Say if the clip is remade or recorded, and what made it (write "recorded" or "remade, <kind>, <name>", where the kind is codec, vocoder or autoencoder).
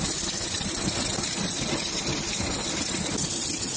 recorded